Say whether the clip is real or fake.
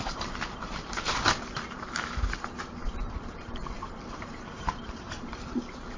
fake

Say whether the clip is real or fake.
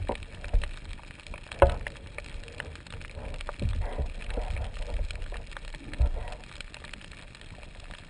real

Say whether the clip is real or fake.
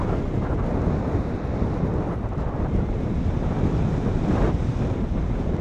real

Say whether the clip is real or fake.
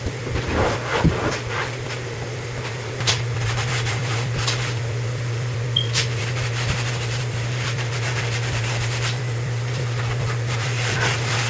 fake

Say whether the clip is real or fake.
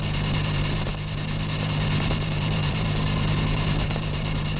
fake